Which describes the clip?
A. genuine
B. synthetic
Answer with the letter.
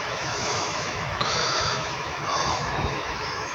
B